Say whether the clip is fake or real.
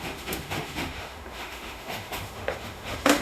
fake